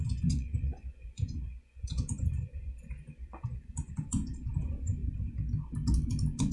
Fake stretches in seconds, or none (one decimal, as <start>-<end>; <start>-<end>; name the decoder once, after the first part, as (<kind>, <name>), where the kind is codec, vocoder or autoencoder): 0.0-5.0 (vocoder, Vocos)